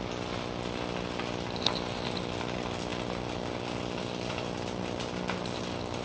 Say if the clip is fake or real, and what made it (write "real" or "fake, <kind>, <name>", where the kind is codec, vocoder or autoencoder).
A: real